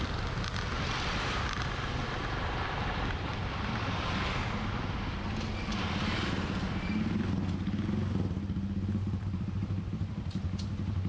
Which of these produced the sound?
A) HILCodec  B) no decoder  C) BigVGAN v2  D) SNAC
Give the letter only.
B